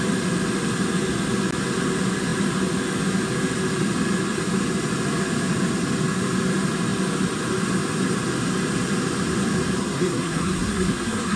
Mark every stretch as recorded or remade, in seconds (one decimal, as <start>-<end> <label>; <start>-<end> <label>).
0.0-9.8 recorded; 9.8-11.4 remade